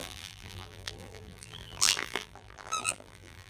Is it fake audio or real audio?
fake